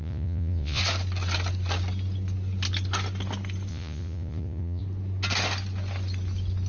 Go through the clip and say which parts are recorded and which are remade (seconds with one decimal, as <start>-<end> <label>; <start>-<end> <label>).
0.0-0.8 remade; 0.8-3.7 recorded; 3.7-4.8 remade; 4.8-6.7 recorded